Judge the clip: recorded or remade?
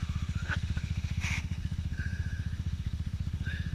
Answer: remade